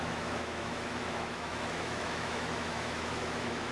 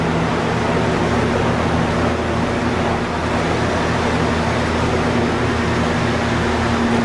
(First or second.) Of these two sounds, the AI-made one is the first